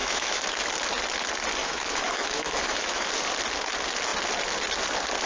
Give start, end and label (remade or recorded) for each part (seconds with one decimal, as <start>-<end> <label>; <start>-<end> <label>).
0.0-0.7 remade; 0.7-1.6 recorded; 1.6-3.1 remade; 3.1-5.3 recorded